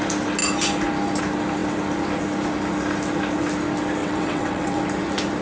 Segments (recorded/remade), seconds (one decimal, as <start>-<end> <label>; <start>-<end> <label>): 0.0-4.0 recorded; 4.0-4.8 remade; 4.8-5.4 recorded